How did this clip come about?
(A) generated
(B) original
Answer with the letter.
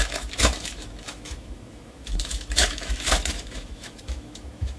A